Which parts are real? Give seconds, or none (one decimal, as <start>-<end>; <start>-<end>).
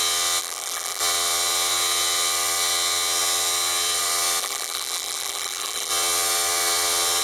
0.0-0.4; 1.0-4.4; 5.9-7.2